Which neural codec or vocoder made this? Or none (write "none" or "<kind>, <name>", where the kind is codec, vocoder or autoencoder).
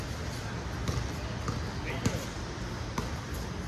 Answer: none